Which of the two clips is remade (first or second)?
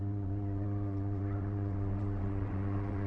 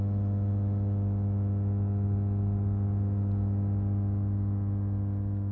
first